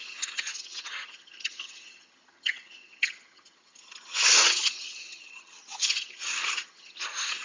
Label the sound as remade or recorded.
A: remade